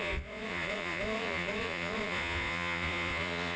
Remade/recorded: remade